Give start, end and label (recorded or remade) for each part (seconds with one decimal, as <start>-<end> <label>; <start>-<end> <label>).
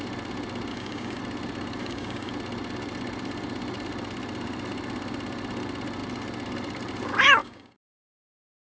0.0-0.7 recorded; 0.7-1.2 remade; 1.2-1.8 recorded; 1.8-2.3 remade; 2.3-7.4 recorded; 7.4-8.1 remade; 8.1-8.6 recorded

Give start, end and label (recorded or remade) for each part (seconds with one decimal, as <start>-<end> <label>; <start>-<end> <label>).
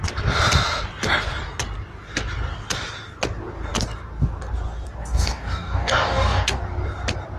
0.0-5.0 recorded; 5.0-6.6 remade; 6.6-7.4 recorded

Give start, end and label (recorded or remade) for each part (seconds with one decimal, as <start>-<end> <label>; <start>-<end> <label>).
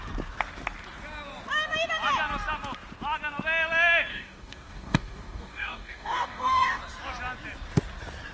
0.0-4.1 recorded; 4.1-6.8 remade; 6.8-8.3 recorded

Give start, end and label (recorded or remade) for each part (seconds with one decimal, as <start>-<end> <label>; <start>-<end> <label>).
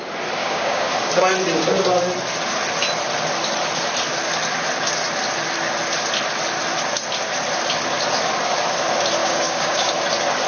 0.0-0.4 recorded; 0.4-0.9 remade; 0.9-9.2 recorded; 9.2-9.9 remade; 9.9-10.5 recorded